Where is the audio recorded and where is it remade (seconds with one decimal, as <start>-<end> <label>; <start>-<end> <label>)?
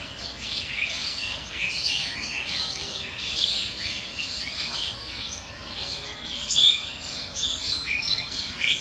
0.0-8.8 remade